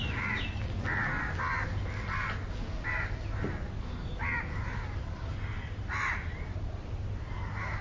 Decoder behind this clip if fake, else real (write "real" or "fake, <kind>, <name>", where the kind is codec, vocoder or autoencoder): real